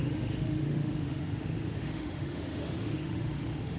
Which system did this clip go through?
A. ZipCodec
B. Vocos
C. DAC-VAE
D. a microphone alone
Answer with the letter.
C